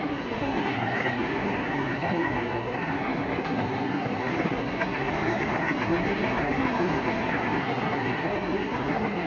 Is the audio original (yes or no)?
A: no